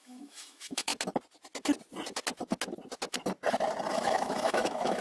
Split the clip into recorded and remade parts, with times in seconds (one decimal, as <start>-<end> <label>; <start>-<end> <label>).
0.0-0.9 remade; 0.9-3.9 recorded; 3.9-5.0 remade

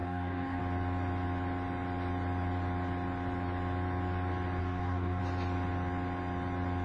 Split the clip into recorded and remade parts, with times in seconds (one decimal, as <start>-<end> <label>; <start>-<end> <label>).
0.0-0.6 remade; 0.6-4.6 recorded; 4.6-5.2 remade; 5.2-6.8 recorded

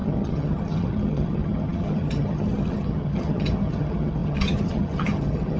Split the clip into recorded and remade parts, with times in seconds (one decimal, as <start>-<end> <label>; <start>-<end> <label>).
0.0-5.6 remade

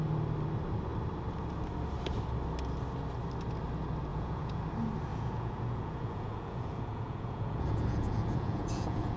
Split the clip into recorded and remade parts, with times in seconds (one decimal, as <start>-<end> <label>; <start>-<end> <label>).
0.0-4.1 recorded; 4.1-4.6 remade; 4.6-5.1 recorded; 5.1-9.2 remade